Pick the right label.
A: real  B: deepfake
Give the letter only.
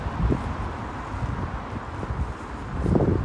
A